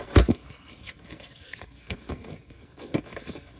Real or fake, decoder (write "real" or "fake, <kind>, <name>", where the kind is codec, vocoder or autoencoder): fake, codec, SNAC